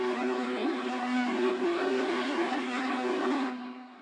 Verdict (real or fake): fake